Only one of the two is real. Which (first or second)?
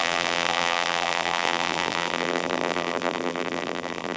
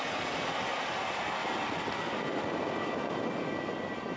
second